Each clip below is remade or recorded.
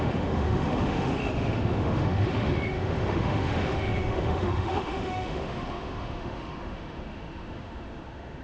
remade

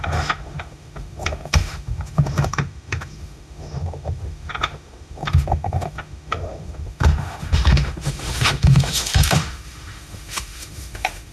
remade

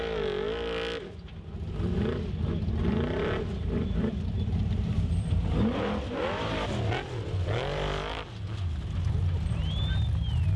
recorded